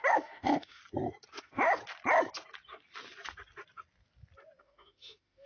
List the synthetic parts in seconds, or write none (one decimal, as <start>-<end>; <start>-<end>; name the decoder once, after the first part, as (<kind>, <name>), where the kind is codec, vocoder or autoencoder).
0.0-0.8 (autoencoder, DAC-VAE); 1.4-1.8; 4.6-5.5